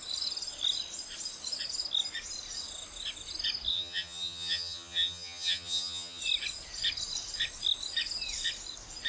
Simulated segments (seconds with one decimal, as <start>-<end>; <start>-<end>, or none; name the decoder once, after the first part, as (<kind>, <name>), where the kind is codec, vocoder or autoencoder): 3.7-6.2 (vocoder, HiFi-GAN)